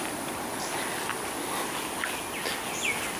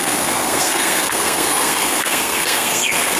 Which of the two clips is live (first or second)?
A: first